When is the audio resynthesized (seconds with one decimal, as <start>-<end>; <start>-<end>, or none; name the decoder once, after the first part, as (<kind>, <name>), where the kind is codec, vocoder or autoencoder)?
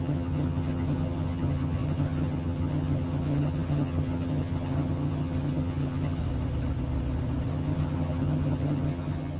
0.0-6.2 (vocoder, HiFi-GAN); 7.5-9.4